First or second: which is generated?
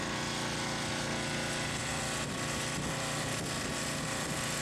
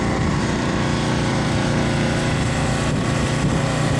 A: second